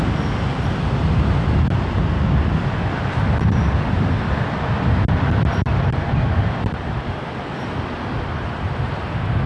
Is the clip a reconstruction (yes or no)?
no